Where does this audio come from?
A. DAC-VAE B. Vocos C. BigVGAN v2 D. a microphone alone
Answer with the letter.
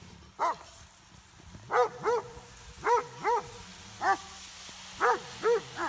D